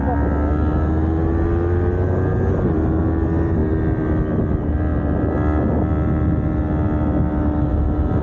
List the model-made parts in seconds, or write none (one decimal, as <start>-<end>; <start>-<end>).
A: none